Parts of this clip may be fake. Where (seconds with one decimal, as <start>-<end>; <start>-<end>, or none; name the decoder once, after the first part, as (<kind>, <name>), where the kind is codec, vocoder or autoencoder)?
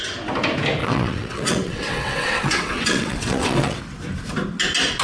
0.8-3.8 (vocoder, WaveNeXt)